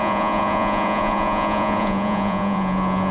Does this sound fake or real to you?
fake